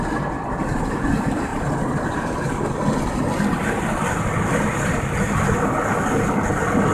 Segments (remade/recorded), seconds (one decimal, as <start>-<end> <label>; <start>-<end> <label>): 0.0-6.9 recorded